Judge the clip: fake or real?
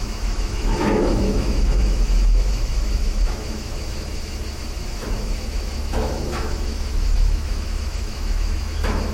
fake